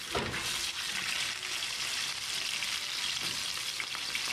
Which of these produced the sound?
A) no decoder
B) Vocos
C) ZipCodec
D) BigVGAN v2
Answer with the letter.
A